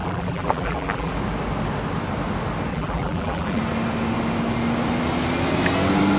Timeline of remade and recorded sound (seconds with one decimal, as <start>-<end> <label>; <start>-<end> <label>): 0.0-1.1 remade; 1.1-2.7 recorded; 2.7-3.6 remade; 3.6-6.2 recorded